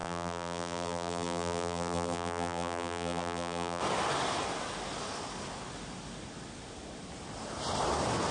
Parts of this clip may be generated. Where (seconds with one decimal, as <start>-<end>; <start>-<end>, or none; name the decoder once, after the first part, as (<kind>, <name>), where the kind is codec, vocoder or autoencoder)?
0.0-3.8 (vocoder, BigVGAN v2)